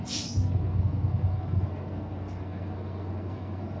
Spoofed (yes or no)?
yes